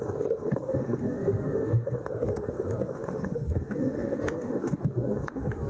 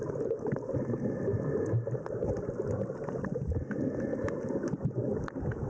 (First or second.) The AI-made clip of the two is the first